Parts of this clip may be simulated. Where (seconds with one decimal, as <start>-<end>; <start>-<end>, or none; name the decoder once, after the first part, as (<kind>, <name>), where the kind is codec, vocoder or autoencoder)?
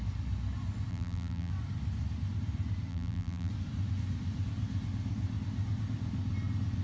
0.9-1.5 (vocoder, BigVGAN v2); 2.9-3.5